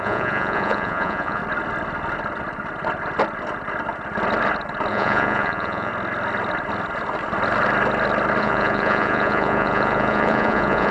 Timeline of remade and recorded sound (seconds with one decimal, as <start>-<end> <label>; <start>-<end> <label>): 0.0-1.4 remade; 1.4-4.9 recorded; 4.9-5.9 remade; 5.9-8.4 recorded; 8.4-10.9 remade